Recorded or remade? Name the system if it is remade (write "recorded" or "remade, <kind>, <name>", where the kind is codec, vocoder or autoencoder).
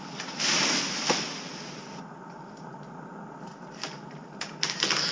recorded